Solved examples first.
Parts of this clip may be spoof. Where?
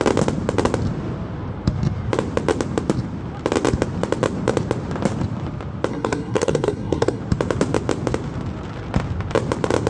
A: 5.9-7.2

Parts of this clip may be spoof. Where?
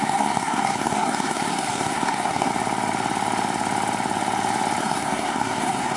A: 0.0-2.5; 4.8-6.0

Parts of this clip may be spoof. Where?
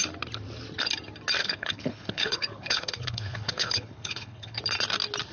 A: 1.4-4.6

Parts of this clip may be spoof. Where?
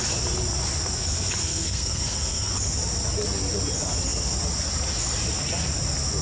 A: 1.4-2.5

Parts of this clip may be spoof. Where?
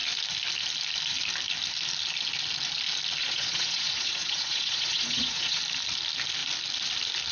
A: 3.2-5.6